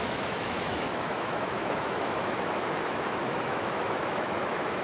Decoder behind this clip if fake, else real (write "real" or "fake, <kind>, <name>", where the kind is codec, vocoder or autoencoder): fake, autoencoder, DAC-VAE